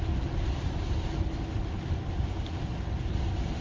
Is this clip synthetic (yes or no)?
no